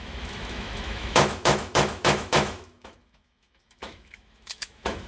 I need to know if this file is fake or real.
fake